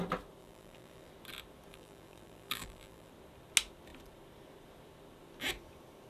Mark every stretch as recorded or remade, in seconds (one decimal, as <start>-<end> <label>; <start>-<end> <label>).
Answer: 0.0-0.4 recorded; 0.4-1.1 remade; 1.1-1.7 recorded; 1.7-3.1 remade; 3.1-6.1 recorded